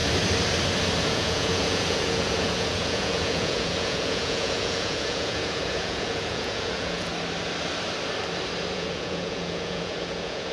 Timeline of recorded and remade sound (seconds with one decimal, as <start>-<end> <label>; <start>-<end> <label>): 0.0-1.0 recorded; 1.0-7.1 remade; 7.1-8.7 recorded; 8.7-10.5 remade